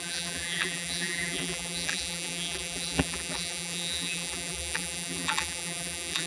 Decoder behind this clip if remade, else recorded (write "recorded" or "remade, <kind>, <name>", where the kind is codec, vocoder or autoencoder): remade, vocoder, BigVGAN v2